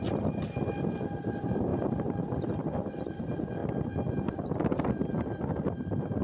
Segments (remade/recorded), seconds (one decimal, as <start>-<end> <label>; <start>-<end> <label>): 0.0-6.2 recorded